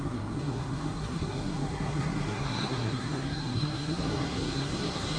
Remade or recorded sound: remade